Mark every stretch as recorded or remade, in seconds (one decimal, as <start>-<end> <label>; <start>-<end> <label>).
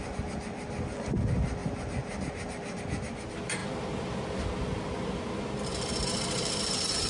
0.0-1.6 recorded; 1.6-2.8 remade; 2.8-5.7 recorded; 5.7-7.1 remade